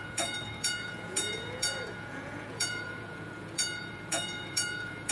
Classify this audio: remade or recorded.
remade